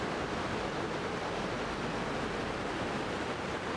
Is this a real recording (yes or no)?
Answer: no